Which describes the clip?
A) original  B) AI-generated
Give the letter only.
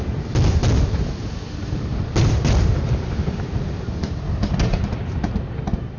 B